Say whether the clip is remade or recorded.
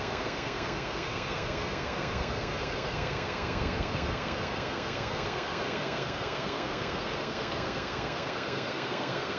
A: remade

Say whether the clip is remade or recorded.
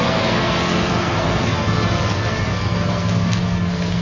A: remade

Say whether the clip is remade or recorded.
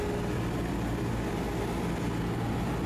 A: recorded